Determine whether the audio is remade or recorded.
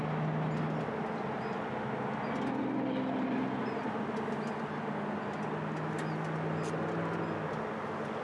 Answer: recorded